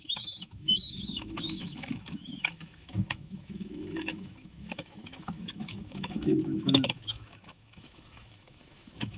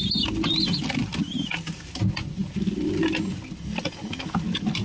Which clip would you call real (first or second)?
second